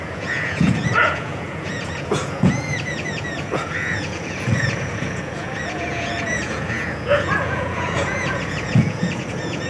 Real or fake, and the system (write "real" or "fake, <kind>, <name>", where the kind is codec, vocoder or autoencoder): fake, vocoder, Vocos